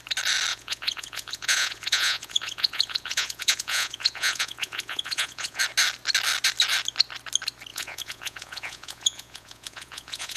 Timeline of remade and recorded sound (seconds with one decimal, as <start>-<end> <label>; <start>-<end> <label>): 0.0-0.5 recorded; 0.5-5.6 remade; 5.6-7.7 recorded; 7.7-10.4 remade

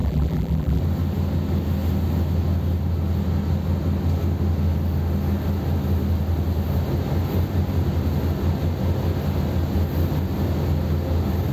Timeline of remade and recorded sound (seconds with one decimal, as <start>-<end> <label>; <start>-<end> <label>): 0.0-0.8 remade; 0.8-11.5 recorded

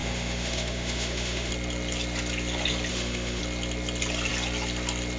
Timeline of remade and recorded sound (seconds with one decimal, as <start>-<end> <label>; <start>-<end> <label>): 0.0-1.5 remade; 1.5-2.9 recorded; 2.9-3.4 remade; 3.4-5.2 recorded

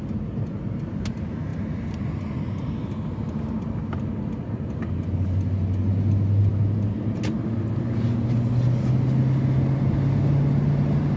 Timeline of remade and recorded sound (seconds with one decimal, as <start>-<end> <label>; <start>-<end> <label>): 0.0-11.2 recorded

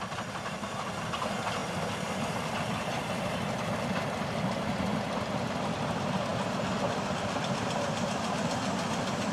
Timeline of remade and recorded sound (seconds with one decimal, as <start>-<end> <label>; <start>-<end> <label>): 0.0-9.3 recorded

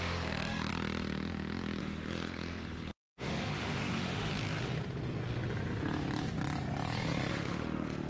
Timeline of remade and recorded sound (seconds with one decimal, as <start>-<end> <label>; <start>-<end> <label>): 0.0-0.7 remade; 0.7-1.8 recorded; 1.8-4.3 remade; 4.3-7.3 recorded; 7.3-8.1 remade

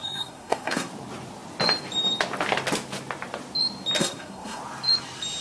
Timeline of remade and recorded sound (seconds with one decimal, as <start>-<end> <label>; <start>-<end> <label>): 0.0-0.9 remade; 0.9-4.0 recorded; 4.0-4.6 remade; 4.6-5.4 recorded

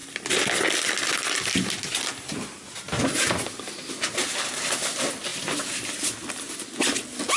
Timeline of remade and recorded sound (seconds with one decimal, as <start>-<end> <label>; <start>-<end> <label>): 0.0-7.4 recorded